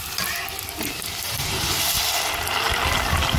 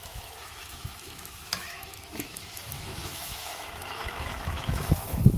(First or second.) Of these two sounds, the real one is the first